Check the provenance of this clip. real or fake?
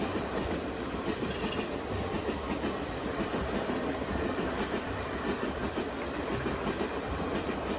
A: real